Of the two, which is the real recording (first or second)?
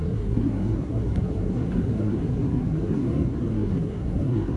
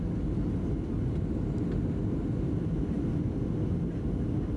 second